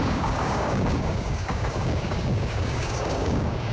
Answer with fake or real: fake